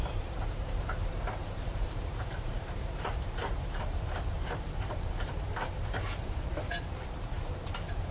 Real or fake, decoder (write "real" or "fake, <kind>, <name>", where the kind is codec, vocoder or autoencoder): fake, vocoder, BigVGAN v2